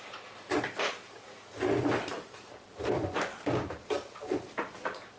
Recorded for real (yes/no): yes